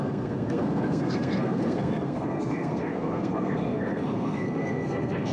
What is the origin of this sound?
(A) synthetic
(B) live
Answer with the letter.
A